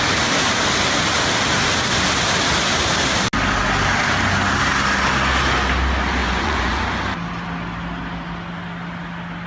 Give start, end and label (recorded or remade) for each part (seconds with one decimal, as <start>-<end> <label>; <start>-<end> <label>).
0.0-6.2 recorded; 6.2-6.8 remade; 6.8-9.5 recorded